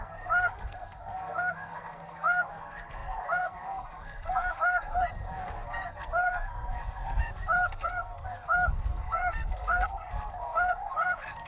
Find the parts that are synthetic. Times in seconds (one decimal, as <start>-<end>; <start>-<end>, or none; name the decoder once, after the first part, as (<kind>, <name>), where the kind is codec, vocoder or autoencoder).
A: 0.0-11.5 (codec, SNAC)